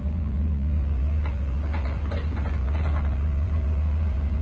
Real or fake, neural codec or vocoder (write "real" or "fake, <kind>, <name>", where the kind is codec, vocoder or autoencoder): fake, vocoder, Vocos